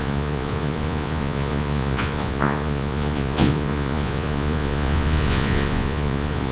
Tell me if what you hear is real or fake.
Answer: fake